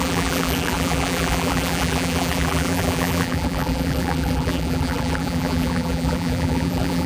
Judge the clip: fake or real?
fake